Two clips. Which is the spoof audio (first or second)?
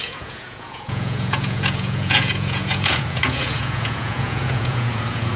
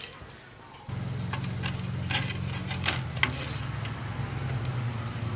first